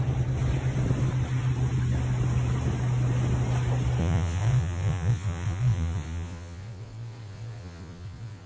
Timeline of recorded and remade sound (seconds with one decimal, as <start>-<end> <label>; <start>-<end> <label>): 0.0-4.0 recorded; 4.0-8.5 remade